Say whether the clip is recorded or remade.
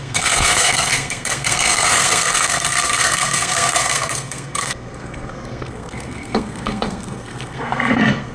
remade